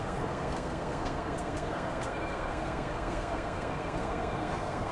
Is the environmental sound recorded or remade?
remade